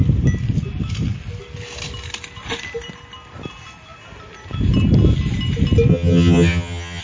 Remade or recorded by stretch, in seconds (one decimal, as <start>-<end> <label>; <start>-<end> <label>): 0.0-5.9 recorded; 5.9-7.0 remade